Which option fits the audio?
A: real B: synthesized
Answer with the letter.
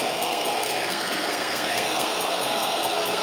B